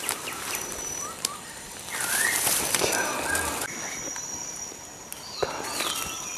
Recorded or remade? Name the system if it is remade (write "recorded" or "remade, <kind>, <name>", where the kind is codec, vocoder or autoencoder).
remade, vocoder, BigVGAN v2